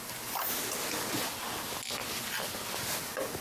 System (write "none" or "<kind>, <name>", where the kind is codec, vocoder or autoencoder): none